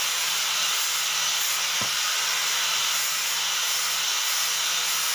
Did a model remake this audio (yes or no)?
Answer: no